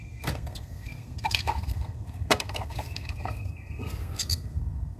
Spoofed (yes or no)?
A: yes